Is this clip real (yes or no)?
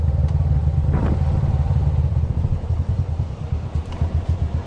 no